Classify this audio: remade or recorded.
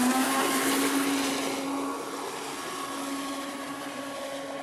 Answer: recorded